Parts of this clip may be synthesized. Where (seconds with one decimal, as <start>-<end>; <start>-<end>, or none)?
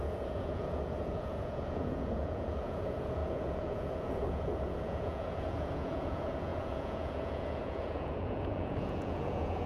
0.0-9.7